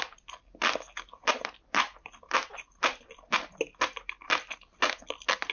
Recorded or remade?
recorded